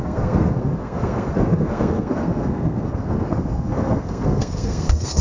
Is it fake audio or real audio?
fake